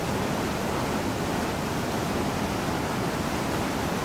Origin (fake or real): real